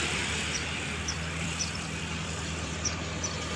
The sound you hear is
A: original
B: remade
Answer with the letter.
B